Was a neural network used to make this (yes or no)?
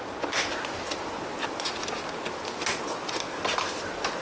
no